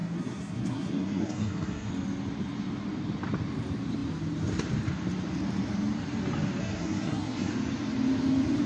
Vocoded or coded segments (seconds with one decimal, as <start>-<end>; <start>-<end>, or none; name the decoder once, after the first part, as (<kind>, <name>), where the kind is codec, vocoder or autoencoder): 0.0-1.9 (codec, SNAC); 6.6-7.5

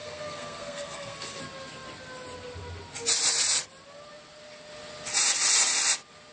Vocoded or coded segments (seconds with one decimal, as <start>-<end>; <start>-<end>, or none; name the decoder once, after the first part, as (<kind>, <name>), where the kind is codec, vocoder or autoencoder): 0.0-1.4 (codec, SNAC)

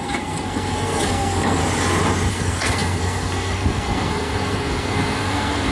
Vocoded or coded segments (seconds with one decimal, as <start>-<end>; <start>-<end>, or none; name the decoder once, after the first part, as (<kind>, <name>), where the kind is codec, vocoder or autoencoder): 0.0-1.6 (codec, SNAC); 2.3-5.7

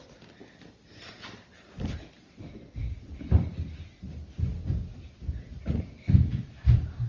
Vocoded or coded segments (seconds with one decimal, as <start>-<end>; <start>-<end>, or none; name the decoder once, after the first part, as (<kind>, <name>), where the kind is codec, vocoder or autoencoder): none

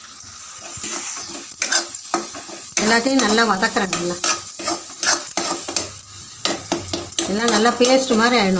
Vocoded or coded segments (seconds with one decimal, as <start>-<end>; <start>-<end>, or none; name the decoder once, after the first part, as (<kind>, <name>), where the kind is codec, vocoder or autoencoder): none

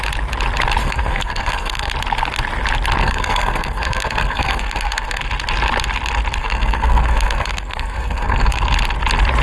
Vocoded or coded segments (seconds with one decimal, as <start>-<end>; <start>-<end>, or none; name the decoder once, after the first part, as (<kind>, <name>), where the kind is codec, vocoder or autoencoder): 0.8-1.9 (codec, SNAC); 3.0-5.2; 6.4-8.6

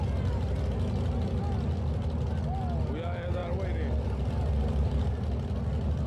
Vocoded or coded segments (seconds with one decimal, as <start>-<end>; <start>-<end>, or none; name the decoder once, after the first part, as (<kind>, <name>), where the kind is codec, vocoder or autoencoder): none

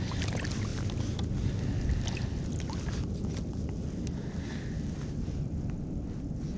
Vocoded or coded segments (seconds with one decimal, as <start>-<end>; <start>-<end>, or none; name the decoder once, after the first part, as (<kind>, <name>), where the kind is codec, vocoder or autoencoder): none